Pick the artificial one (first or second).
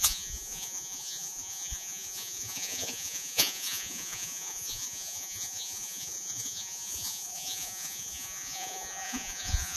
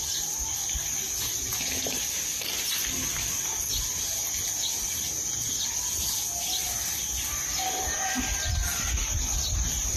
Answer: first